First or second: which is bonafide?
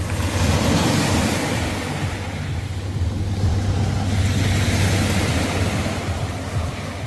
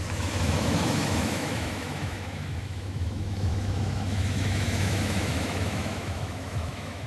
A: first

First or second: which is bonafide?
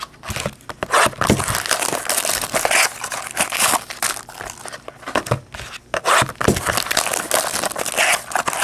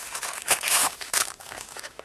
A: first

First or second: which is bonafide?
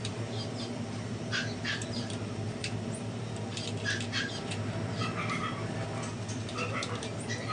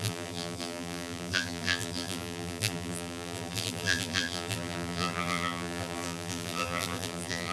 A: first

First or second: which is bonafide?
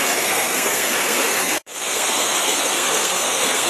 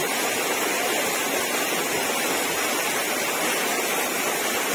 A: second